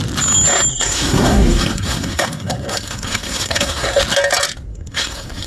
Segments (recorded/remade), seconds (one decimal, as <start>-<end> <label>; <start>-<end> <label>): 0.0-0.7 recorded; 0.7-4.0 remade; 4.0-4.7 recorded; 4.7-5.5 remade